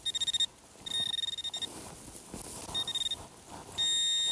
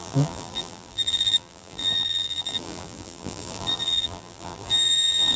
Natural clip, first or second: first